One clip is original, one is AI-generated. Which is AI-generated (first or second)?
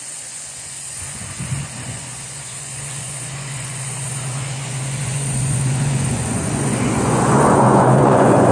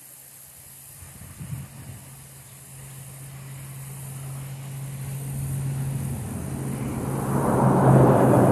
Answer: first